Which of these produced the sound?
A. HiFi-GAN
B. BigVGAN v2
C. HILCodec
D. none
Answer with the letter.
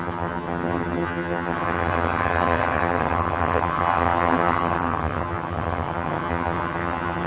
A